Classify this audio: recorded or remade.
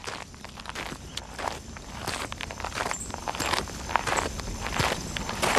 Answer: remade